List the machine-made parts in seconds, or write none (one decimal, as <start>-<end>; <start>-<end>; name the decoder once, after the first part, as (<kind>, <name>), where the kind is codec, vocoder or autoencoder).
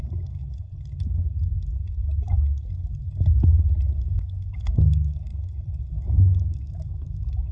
0.0-0.4 (autoencoder, DAC-VAE); 4.1-5.3; 6.0-7.5